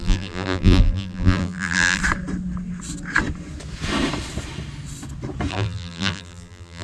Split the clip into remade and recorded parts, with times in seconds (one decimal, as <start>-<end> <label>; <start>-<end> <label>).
0.0-2.0 remade; 2.0-5.5 recorded; 5.5-6.8 remade